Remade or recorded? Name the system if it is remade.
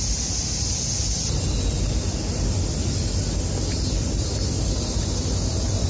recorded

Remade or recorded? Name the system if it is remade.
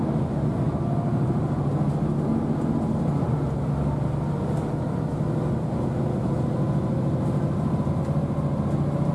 recorded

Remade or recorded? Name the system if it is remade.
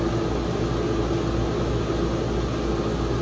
recorded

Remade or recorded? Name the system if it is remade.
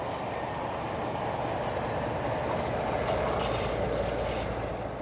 recorded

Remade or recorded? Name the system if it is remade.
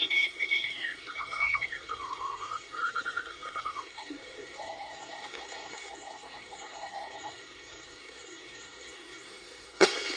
remade, codec, SNAC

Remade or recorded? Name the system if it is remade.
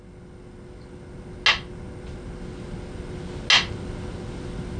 recorded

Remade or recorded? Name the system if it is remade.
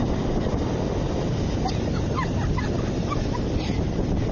recorded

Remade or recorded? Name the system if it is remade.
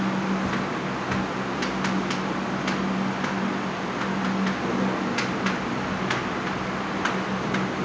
recorded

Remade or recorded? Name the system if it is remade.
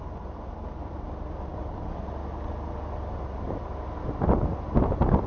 recorded